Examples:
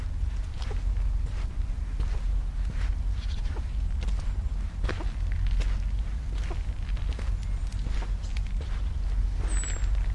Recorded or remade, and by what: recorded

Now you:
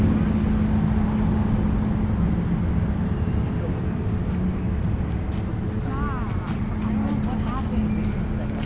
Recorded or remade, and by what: recorded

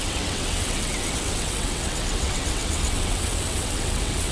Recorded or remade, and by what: remade, vocoder, WaveNeXt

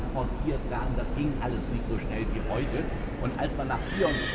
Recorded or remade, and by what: recorded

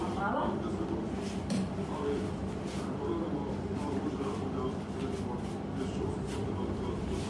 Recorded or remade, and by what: remade, vocoder, BigVGAN v2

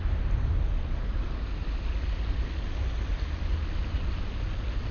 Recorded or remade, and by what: recorded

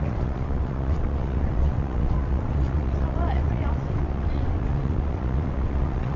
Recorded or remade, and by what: remade, vocoder, WaveNeXt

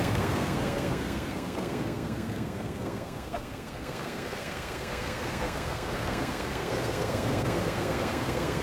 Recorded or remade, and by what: remade, codec, SNAC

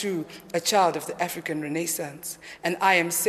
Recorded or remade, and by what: recorded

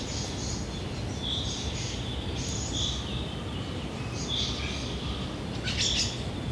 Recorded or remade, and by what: recorded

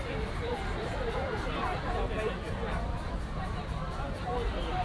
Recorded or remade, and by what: remade, vocoder, BigVGAN v2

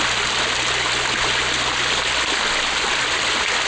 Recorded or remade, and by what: recorded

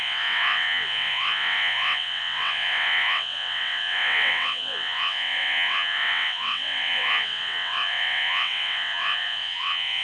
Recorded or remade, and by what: remade, vocoder, WaveNeXt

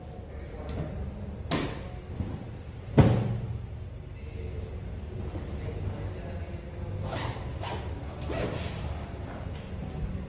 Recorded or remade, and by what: recorded